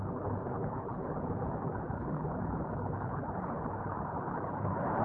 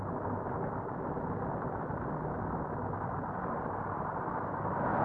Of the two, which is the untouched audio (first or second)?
second